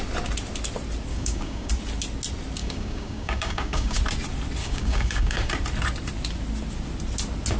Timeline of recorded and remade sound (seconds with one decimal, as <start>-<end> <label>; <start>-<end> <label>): 0.0-1.1 recorded; 1.1-1.7 remade; 1.7-2.6 recorded; 2.6-4.0 remade; 4.0-4.6 recorded; 4.6-5.5 remade; 5.5-7.6 recorded